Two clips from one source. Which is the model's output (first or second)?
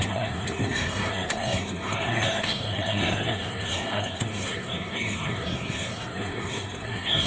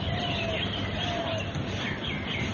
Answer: first